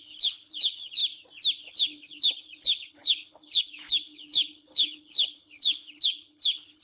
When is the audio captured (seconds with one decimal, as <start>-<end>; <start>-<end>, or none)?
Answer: 1.0-1.6